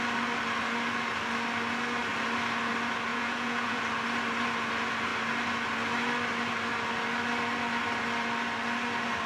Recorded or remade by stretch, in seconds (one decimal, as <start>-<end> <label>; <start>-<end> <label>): 0.0-3.1 recorded; 3.1-3.8 remade; 3.8-9.3 recorded